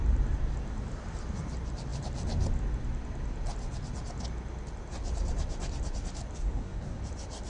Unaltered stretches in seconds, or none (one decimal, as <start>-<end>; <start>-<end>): 0.0-6.4; 7.0-7.5